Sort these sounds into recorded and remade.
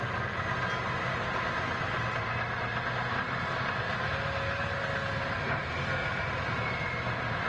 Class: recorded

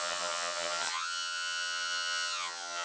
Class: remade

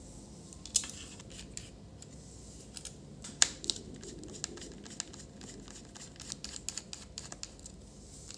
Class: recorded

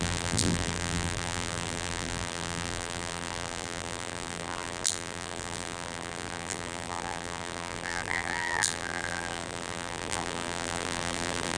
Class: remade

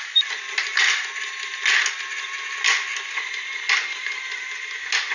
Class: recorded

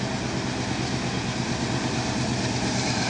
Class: recorded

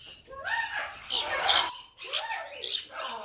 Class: remade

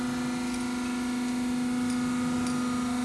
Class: recorded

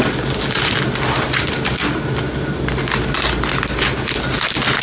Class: recorded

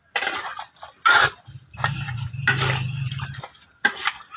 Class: recorded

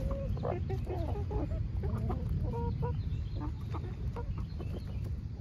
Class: recorded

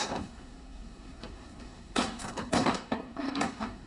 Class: remade